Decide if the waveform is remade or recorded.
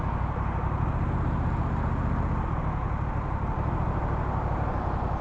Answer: recorded